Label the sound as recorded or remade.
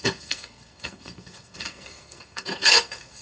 remade